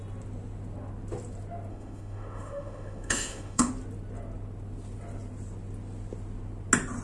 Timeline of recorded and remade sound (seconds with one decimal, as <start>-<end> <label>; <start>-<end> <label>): 0.0-1.7 recorded; 1.7-3.7 remade; 3.7-7.0 recorded